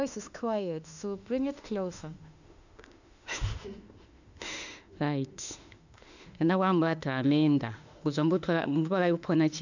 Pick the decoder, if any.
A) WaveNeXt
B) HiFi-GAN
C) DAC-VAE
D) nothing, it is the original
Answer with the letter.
C